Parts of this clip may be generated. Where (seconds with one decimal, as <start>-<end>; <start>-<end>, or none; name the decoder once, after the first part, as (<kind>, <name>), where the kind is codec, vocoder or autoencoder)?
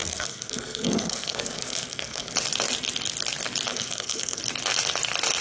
0.0-2.3 (codec, SNAC); 3.7-4.4